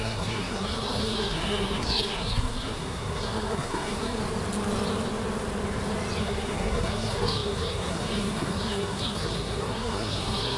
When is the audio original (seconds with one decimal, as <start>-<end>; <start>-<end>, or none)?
4.2-6.2